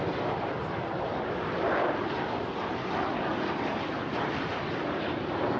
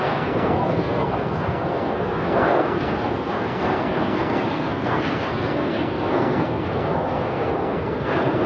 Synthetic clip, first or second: second